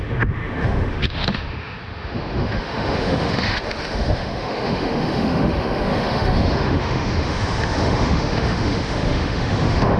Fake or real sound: fake